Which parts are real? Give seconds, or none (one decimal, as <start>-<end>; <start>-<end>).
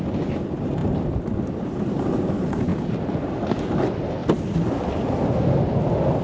0.0-6.2